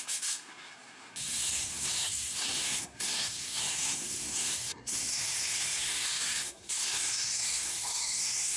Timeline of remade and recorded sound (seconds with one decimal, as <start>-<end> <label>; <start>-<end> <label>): 0.0-8.6 remade